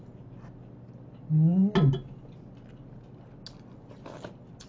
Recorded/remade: recorded